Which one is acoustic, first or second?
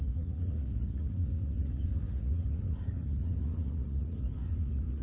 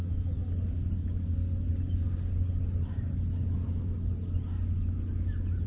second